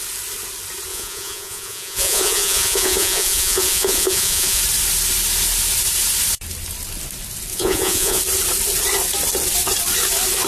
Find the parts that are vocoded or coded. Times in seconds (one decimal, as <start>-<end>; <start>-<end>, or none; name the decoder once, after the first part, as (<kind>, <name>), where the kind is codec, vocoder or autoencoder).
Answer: 0.9-4.6 (vocoder, Vocos); 7.5-8.2